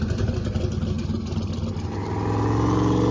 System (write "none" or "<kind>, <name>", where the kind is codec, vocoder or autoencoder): none